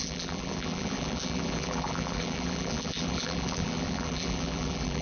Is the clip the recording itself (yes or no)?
no